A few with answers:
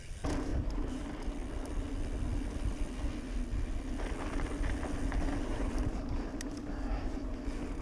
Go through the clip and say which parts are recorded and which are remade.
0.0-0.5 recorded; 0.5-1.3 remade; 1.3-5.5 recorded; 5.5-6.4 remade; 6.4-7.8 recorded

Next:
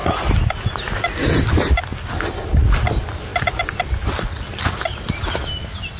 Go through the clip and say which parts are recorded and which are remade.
0.0-1.9 remade; 1.9-3.3 recorded; 3.3-3.9 remade; 3.9-6.0 recorded

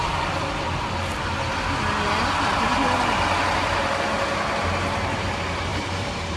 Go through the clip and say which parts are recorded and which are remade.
0.0-0.9 remade; 0.9-5.7 recorded; 5.7-6.4 remade

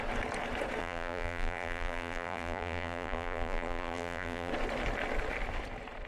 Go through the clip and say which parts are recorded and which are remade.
0.0-0.8 recorded; 0.8-4.5 remade; 4.5-6.1 recorded